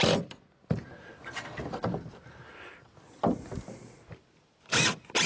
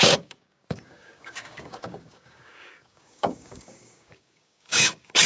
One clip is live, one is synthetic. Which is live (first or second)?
first